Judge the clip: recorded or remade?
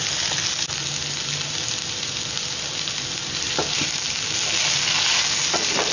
recorded